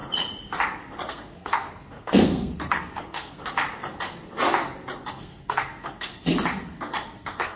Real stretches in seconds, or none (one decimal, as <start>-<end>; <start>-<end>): 0.0-1.1; 3.4-5.1